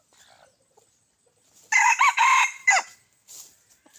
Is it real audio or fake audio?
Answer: real